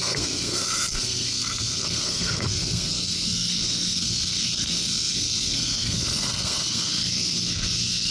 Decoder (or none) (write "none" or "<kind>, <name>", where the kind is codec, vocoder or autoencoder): codec, SNAC